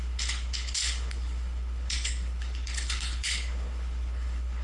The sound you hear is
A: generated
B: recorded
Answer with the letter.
A